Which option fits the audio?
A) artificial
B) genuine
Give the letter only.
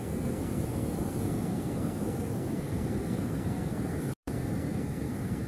A